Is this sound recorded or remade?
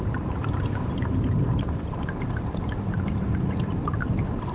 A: remade